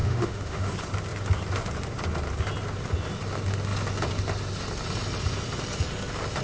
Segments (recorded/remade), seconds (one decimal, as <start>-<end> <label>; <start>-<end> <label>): 0.0-0.7 remade; 0.7-6.4 recorded